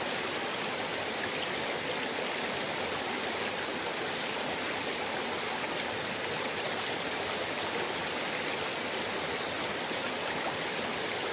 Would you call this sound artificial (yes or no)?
no